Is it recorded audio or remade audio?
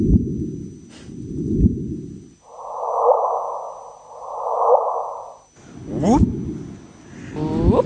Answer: recorded